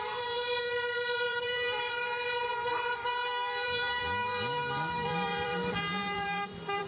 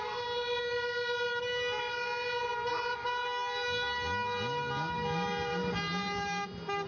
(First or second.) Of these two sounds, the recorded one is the second